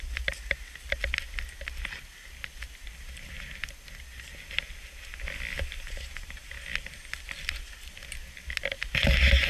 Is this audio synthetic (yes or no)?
no